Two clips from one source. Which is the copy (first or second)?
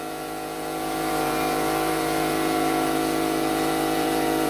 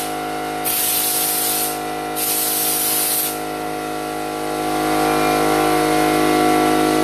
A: first